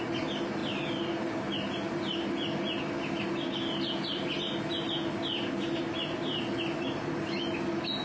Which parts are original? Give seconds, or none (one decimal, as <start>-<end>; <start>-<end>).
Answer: 0.0-8.0